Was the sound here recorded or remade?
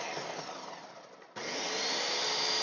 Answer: recorded